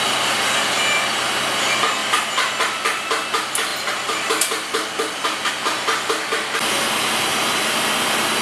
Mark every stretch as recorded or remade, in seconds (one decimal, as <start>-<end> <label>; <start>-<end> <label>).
0.0-8.4 recorded